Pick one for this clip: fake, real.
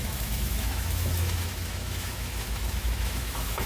fake